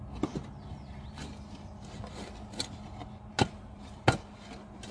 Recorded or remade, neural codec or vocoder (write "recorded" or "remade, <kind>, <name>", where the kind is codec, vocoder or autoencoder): recorded